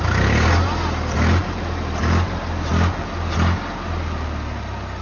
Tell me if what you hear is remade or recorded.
recorded